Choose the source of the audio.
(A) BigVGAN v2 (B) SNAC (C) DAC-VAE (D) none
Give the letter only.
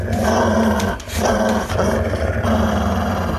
D